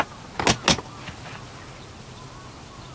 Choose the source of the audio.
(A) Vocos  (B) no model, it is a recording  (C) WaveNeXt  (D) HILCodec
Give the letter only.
B